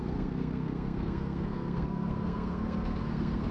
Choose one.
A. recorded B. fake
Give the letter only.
B